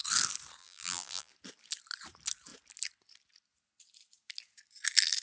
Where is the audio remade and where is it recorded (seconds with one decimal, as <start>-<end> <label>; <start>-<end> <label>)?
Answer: 0.0-0.6 recorded; 0.6-1.3 remade; 1.3-5.2 recorded